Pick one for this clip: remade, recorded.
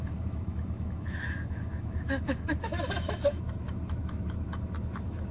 remade